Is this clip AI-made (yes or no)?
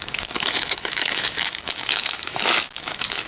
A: yes